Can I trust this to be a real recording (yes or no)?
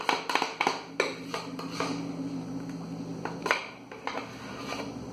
yes